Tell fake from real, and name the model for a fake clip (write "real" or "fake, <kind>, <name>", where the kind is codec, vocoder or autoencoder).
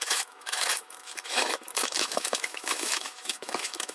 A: fake, autoencoder, DAC-VAE